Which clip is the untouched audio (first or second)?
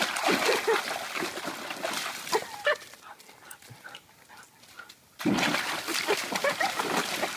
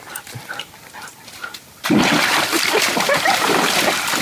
first